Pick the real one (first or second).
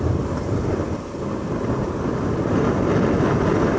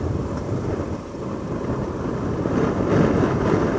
first